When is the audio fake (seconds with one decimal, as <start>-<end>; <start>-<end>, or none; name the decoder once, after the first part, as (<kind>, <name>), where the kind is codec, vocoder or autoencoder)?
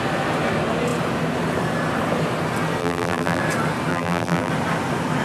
2.8-3.4 (vocoder, BigVGAN v2); 3.9-4.5